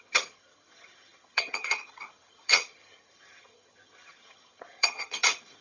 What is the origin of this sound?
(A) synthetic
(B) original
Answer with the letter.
A